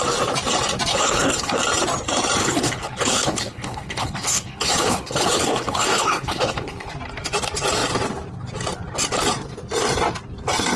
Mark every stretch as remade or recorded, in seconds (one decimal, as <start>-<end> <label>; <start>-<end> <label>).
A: 0.0-0.9 recorded; 0.9-1.6 remade; 1.6-2.4 recorded; 2.4-6.9 remade; 6.9-10.8 recorded